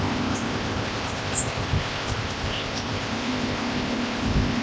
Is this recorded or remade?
remade